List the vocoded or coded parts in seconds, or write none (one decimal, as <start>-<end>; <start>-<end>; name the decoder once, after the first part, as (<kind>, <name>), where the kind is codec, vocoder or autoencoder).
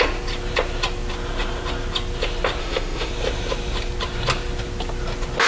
2.6-3.1 (autoencoder, DAC-VAE)